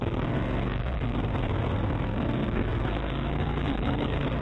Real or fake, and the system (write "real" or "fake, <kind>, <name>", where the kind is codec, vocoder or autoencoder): fake, codec, SNAC